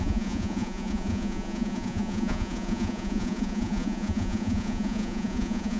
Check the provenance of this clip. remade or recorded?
remade